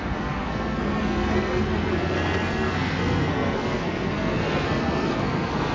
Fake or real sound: fake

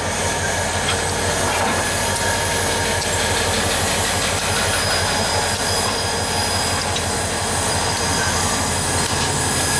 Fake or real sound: real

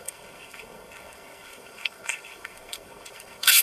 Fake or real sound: fake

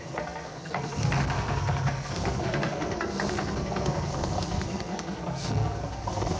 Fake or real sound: fake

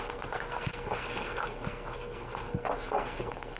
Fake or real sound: fake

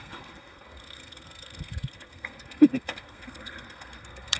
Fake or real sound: fake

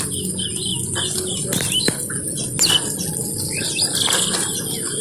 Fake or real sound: real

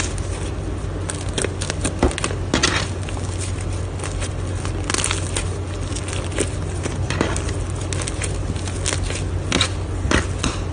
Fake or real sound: real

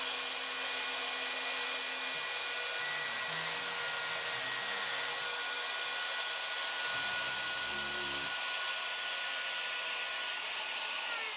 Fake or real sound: real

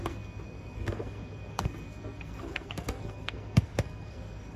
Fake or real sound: fake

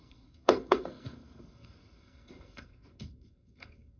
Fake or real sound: fake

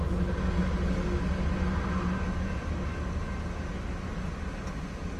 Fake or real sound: real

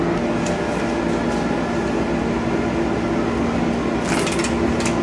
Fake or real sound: real